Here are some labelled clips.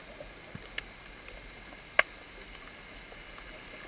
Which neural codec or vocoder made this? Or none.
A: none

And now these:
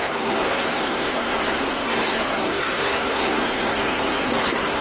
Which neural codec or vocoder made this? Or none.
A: codec, SNAC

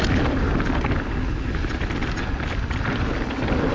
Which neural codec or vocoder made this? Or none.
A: none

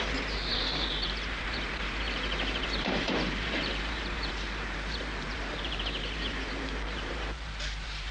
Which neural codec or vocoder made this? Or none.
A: vocoder, BigVGAN v2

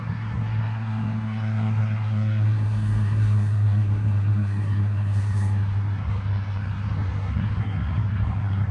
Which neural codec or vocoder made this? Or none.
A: codec, SNAC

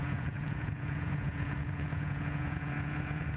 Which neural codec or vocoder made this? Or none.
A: vocoder, Vocos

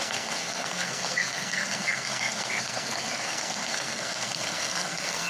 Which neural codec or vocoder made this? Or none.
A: codec, SNAC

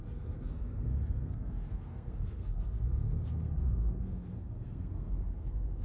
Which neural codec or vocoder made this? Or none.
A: codec, SNAC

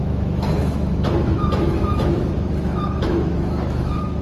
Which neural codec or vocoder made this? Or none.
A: autoencoder, DAC-VAE